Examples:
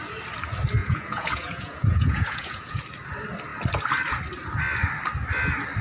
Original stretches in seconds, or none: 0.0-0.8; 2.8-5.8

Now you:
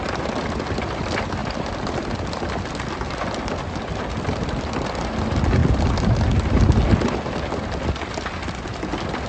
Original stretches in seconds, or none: 0.0-9.3

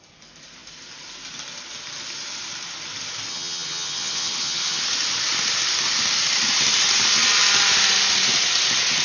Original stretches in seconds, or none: 0.0-3.3; 4.8-9.0

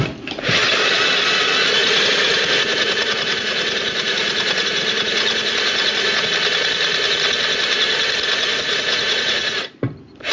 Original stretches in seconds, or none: 0.0-1.8; 6.3-8.5; 9.8-10.3

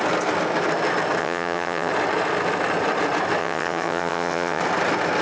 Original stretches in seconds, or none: 0.0-1.2; 1.9-3.4; 4.6-5.2

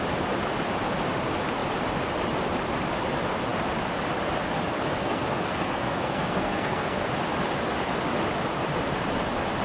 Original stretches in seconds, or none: 0.0-5.0; 7.1-9.6

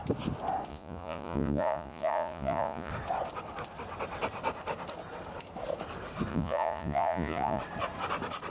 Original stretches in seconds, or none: 0.0-0.7; 2.9-6.3; 7.6-8.5

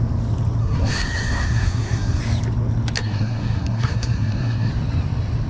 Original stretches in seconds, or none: 0.0-0.6; 2.2-3.0; 4.7-5.5